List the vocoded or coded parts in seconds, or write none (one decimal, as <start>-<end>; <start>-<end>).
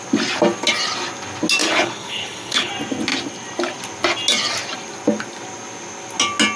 1.6-2.7